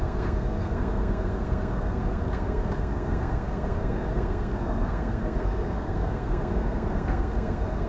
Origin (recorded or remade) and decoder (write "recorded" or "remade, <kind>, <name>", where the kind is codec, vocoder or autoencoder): remade, codec, SNAC